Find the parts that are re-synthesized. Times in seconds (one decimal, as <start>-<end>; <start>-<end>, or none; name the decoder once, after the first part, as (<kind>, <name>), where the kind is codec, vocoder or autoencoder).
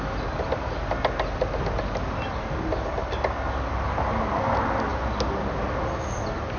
none